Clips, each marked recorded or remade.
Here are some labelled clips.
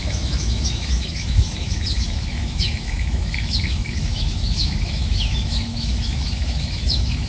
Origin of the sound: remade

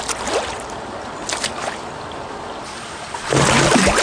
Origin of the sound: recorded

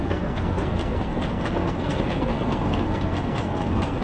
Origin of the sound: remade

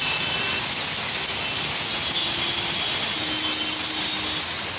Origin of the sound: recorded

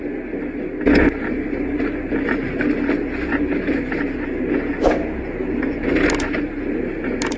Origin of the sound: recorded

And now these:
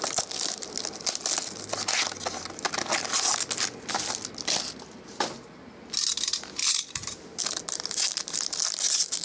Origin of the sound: recorded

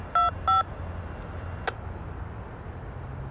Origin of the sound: recorded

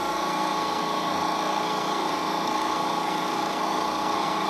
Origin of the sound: remade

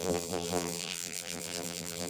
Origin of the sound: remade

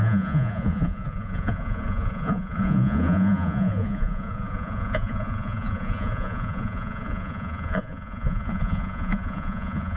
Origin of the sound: remade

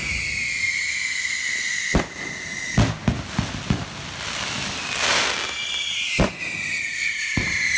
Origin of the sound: recorded